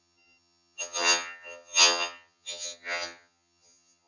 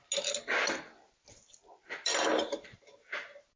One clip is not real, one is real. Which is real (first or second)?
second